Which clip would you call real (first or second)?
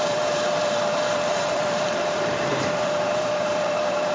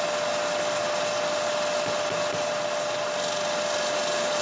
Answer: second